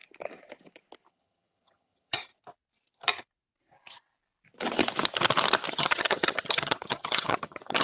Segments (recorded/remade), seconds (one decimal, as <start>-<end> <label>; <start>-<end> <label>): 0.0-1.1 recorded; 1.1-2.3 remade; 2.3-5.7 recorded; 5.7-7.8 remade